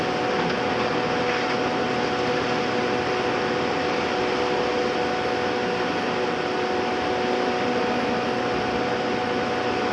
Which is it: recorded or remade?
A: recorded